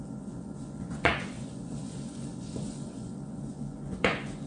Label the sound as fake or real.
fake